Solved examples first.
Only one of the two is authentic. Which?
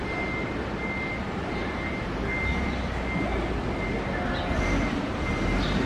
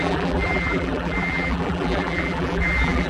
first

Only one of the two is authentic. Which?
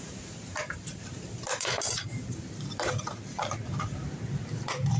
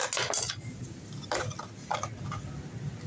second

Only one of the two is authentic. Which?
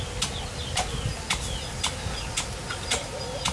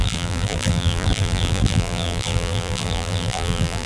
first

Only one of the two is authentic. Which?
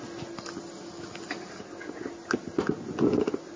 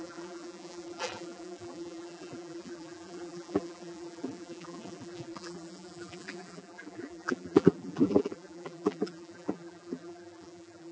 first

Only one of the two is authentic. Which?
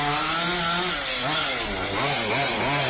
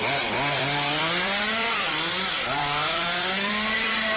first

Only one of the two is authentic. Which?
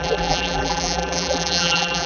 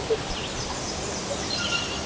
second